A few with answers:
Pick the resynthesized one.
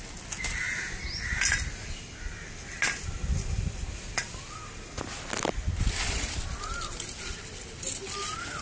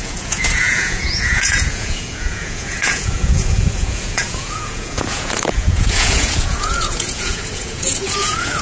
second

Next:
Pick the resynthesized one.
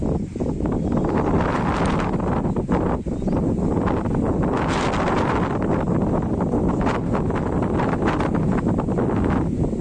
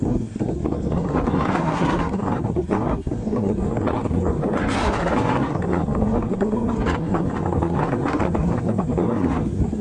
second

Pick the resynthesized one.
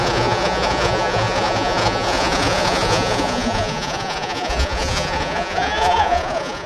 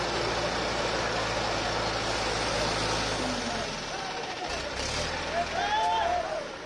first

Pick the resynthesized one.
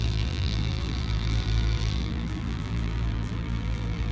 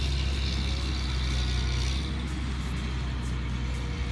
first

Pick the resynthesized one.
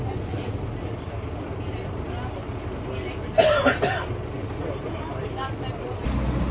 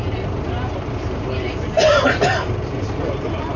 second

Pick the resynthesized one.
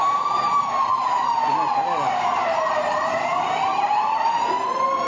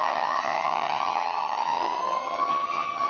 second